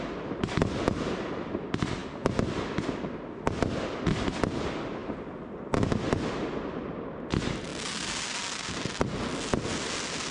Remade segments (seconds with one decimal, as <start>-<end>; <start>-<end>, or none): none